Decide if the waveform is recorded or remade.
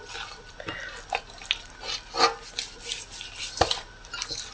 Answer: recorded